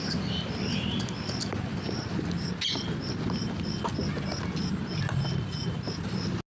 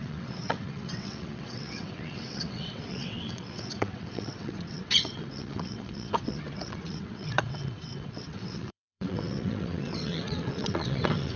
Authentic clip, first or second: first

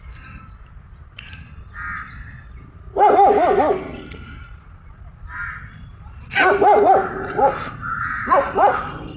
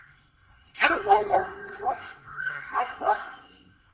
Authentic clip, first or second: first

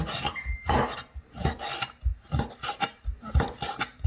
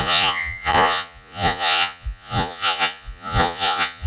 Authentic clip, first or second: first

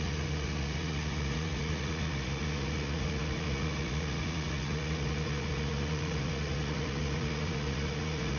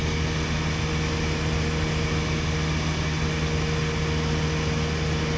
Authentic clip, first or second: second